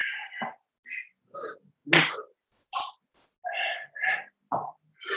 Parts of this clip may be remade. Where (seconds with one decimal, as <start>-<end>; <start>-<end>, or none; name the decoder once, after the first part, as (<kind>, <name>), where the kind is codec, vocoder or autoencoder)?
none